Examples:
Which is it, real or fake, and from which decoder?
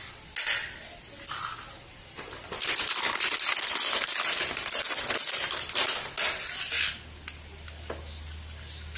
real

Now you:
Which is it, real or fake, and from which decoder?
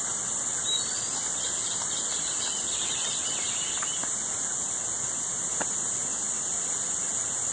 real